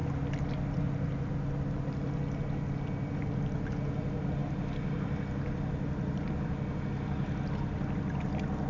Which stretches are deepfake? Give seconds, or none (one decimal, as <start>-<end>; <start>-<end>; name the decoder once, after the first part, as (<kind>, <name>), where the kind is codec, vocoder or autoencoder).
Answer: none